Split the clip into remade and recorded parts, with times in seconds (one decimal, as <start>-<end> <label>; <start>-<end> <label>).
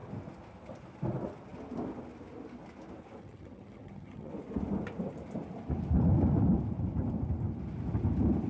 0.0-3.2 recorded; 3.2-4.3 remade; 4.3-8.5 recorded